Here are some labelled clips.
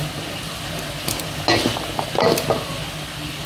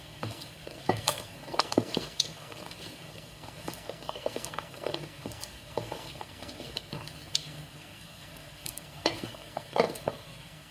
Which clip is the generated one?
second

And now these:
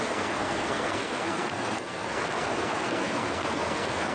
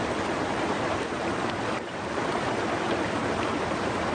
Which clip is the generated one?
first